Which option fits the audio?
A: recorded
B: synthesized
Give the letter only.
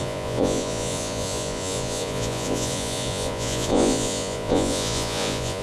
B